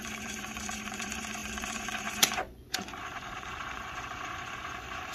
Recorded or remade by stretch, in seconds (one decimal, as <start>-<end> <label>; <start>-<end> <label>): 0.0-5.1 remade